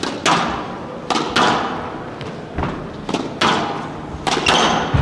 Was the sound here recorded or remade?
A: recorded